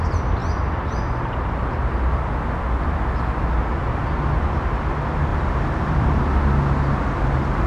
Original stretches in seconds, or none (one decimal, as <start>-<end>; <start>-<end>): 0.0-5.3; 6.2-7.7